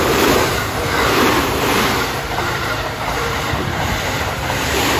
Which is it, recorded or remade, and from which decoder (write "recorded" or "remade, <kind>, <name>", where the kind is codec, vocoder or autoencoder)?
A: remade, vocoder, BigVGAN v2